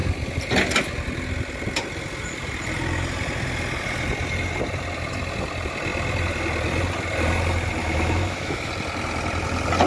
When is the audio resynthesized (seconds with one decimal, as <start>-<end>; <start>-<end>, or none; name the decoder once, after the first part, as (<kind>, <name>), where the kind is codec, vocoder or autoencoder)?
7.8-8.7 (autoencoder, DAC-VAE)